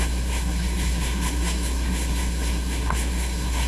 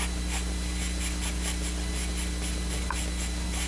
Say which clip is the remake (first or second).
first